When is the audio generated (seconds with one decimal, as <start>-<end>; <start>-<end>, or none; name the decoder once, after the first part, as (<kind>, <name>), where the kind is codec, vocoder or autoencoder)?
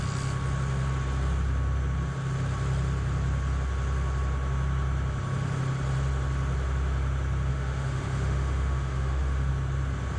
7.5-9.5 (autoencoder, DAC-VAE)